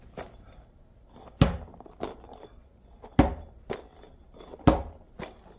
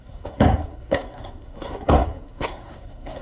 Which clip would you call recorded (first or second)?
first